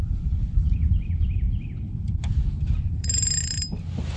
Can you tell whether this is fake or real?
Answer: fake